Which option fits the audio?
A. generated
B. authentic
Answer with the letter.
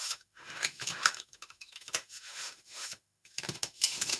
A